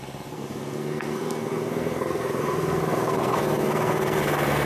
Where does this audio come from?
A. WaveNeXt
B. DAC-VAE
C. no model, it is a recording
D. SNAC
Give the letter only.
D